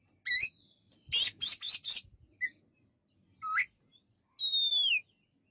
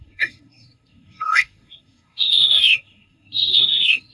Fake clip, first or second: second